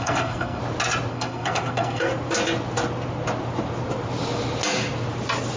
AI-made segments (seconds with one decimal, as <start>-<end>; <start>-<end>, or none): 0.0-0.6; 1.1-2.1